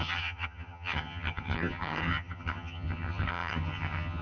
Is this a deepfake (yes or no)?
yes